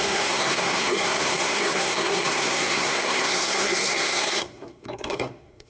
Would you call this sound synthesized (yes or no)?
yes